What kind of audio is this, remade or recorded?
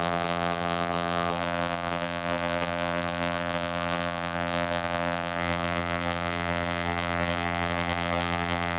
remade